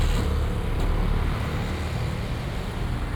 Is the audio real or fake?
real